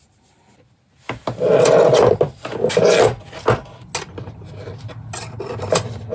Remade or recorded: recorded